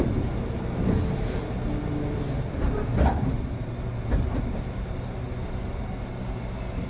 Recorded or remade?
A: recorded